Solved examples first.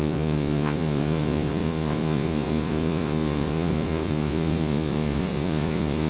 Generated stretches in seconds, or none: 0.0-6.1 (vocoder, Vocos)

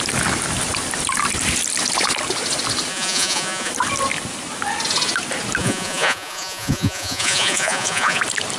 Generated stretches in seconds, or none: 2.9-3.7 (vocoder, Vocos); 5.6-8.2

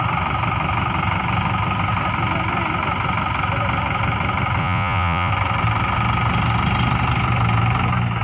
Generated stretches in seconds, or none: 4.6-5.3 (vocoder, Vocos)

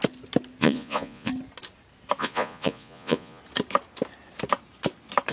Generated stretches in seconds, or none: 0.6-1.3 (vocoder, Vocos); 2.2-3.4

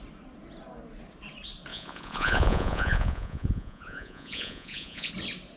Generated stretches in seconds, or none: 1.7-5.1 (vocoder, Vocos)

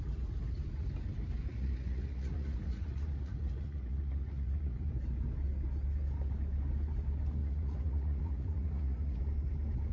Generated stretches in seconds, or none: 1.5-4.9 (vocoder, Vocos); 7.4-9.2

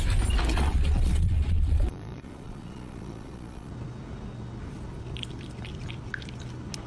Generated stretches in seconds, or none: 0.5-3.7 (vocoder, Vocos)